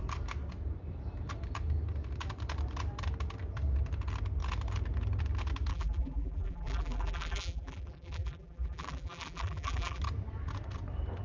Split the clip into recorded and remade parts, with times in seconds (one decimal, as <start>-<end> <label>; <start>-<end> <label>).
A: 0.0-5.7 recorded; 5.7-10.0 remade; 10.0-11.2 recorded